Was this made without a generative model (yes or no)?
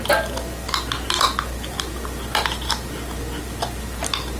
yes